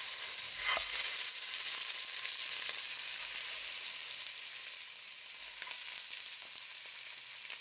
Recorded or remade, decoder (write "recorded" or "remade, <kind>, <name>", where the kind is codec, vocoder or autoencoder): recorded